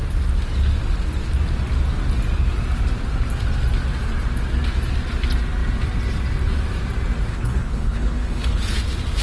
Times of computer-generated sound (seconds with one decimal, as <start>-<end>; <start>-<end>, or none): 7.3-8.6